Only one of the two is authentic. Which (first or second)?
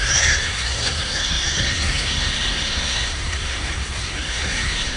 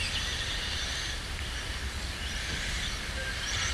second